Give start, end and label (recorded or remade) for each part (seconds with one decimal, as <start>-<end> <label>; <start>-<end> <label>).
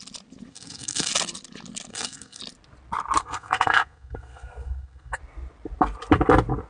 0.0-0.5 recorded; 0.5-1.1 remade; 1.1-1.9 recorded; 1.9-2.4 remade; 2.4-3.2 recorded; 3.2-5.2 remade; 5.2-6.7 recorded